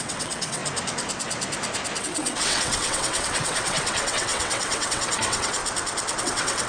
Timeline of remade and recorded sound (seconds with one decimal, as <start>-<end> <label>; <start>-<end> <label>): 0.0-0.6 remade; 0.6-2.0 recorded; 2.0-5.6 remade; 5.6-6.2 recorded; 6.2-6.7 remade